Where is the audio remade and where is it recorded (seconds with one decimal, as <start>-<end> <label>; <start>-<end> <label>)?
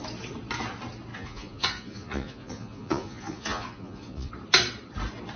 0.0-1.1 recorded; 1.1-4.3 remade; 4.3-5.4 recorded